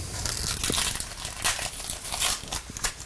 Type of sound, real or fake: real